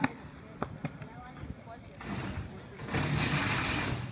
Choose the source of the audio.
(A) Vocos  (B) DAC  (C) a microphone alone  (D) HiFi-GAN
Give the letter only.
C